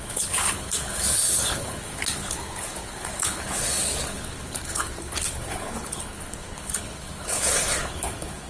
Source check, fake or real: fake